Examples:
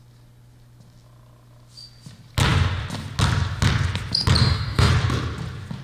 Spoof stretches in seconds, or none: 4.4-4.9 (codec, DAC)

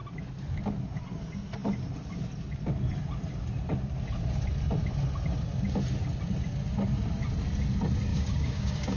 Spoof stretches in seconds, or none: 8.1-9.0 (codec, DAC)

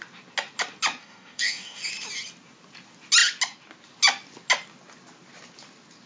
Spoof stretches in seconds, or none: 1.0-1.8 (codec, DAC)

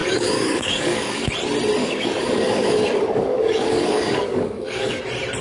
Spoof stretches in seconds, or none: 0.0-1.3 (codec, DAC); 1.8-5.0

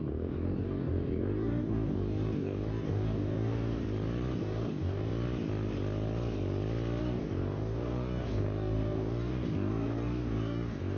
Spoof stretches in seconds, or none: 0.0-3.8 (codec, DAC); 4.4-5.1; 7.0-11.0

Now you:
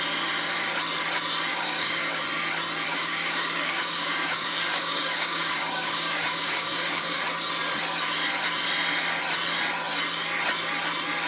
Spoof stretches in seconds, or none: 1.5-2.2 (codec, DAC); 2.9-7.2

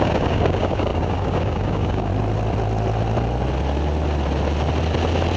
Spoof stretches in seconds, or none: 0.0-2.1 (codec, DAC)

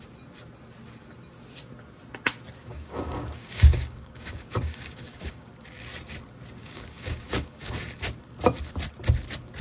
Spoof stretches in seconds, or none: 2.6-5.5 (codec, DAC); 6.6-7.7